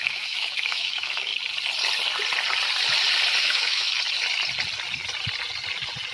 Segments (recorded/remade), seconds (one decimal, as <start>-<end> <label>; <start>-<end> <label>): 0.0-1.3 remade; 1.3-3.4 recorded; 3.4-3.9 remade; 3.9-6.1 recorded